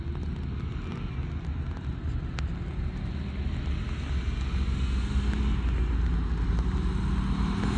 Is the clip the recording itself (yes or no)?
yes